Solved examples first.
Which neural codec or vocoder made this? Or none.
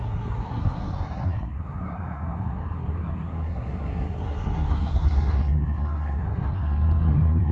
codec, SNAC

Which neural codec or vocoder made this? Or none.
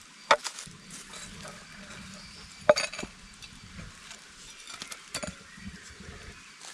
none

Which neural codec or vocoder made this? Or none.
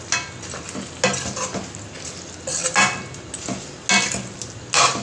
none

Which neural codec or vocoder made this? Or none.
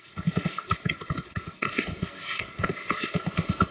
codec, SNAC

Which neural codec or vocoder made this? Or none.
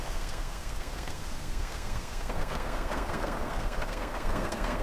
codec, SNAC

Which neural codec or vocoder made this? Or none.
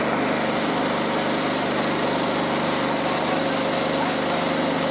none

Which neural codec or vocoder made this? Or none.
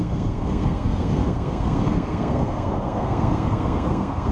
codec, SNAC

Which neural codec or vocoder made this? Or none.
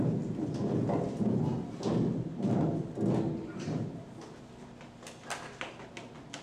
none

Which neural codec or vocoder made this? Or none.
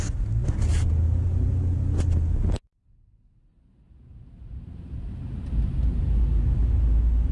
none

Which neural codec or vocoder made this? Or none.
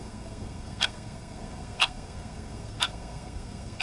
codec, SNAC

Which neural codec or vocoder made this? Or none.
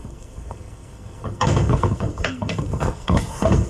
codec, SNAC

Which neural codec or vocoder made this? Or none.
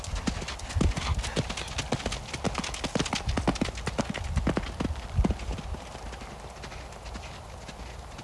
none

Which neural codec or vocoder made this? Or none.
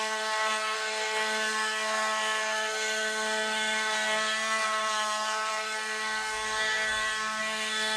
codec, SNAC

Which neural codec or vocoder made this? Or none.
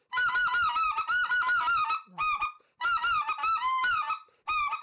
none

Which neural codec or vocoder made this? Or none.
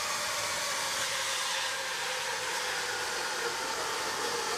none